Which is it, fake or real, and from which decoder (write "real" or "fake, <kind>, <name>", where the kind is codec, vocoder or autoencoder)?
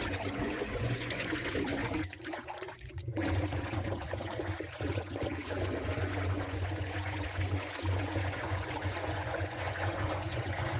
fake, vocoder, Vocos